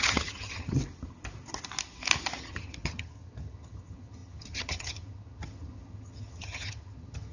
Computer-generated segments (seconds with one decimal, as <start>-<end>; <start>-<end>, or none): 0.0-0.8; 2.4-7.3